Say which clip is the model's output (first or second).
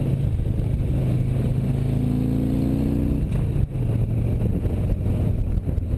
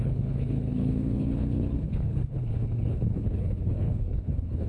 second